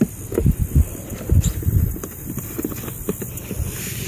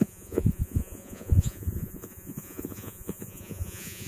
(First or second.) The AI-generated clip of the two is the second